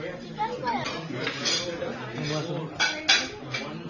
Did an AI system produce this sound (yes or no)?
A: no